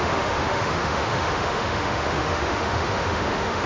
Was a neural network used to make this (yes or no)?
yes